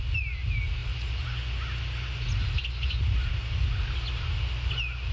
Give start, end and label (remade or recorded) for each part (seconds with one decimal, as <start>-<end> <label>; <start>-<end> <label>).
0.0-5.1 recorded